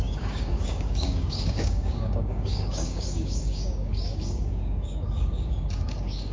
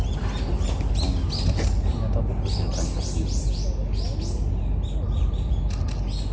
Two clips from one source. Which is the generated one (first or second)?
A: first